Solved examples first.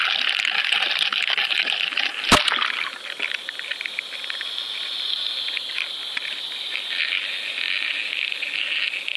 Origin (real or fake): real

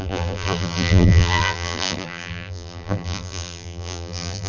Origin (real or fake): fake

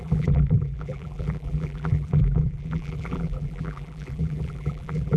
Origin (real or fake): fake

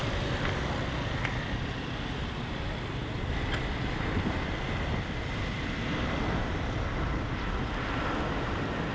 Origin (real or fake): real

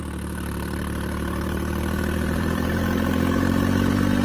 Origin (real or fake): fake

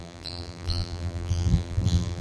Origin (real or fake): fake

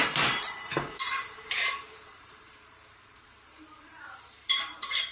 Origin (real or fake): fake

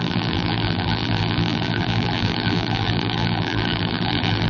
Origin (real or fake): fake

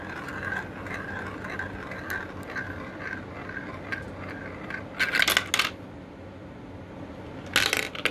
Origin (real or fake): real